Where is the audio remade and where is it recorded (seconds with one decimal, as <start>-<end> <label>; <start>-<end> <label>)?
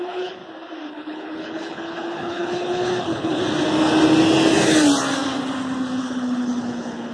0.0-0.4 remade; 0.4-0.9 recorded; 0.9-3.4 remade; 3.4-6.0 recorded; 6.0-7.1 remade